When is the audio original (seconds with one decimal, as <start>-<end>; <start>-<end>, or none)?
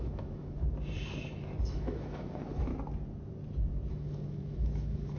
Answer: 0.6-1.6; 2.7-3.9